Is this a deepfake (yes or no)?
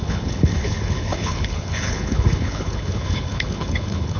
yes